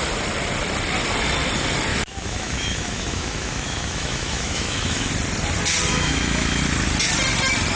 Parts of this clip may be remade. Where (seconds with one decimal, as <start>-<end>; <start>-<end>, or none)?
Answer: 1.9-5.1; 5.9-6.6